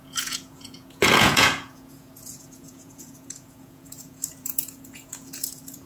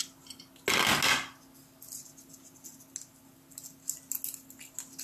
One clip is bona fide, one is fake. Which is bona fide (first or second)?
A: second